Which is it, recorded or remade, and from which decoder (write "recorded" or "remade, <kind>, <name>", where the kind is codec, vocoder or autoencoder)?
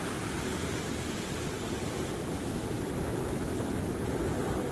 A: recorded